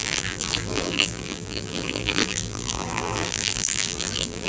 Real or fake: fake